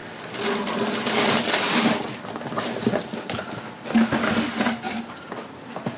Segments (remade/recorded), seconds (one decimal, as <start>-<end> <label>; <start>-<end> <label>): 0.0-6.0 recorded